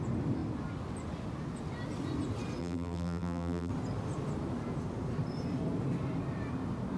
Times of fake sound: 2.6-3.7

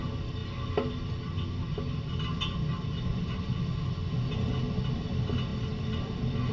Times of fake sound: none

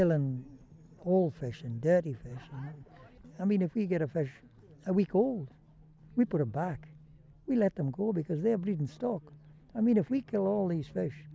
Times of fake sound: none

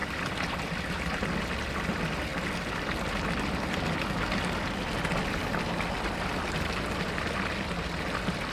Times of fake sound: none

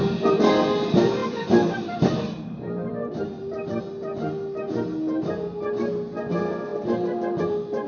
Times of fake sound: 1.2-3.8; 6.7-7.4

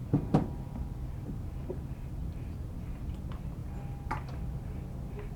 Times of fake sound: 0.0-1.5; 2.2-3.2

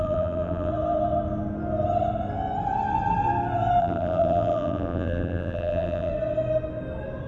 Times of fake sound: 0.0-0.7; 3.8-6.1